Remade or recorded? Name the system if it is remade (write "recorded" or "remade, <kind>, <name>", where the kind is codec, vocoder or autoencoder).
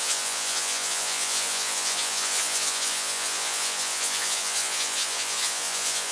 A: remade, vocoder, Vocos